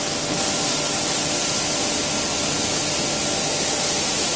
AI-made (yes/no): no